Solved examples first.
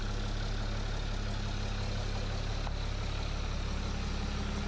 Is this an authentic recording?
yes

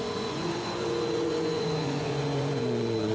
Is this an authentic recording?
no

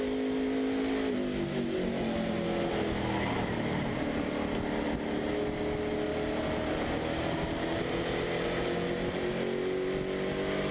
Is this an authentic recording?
yes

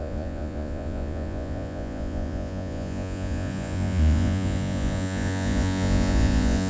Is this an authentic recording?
no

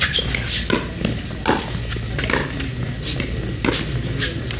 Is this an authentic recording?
yes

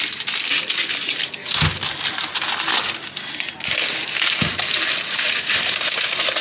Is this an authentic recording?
yes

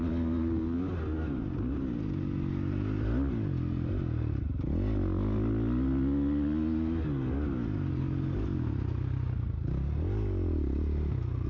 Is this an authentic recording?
yes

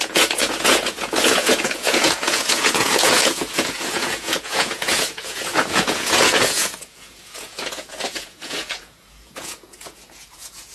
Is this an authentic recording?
no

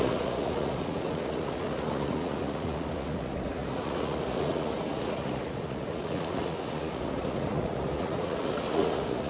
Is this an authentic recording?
no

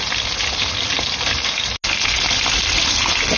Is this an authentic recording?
yes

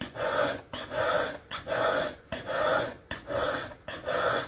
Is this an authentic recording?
no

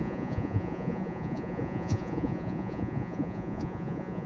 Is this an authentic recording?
no